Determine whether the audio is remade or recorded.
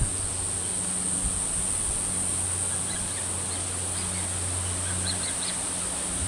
recorded